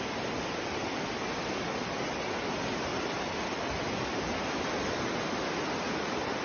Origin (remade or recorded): recorded